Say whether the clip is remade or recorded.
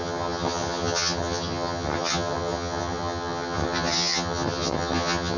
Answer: remade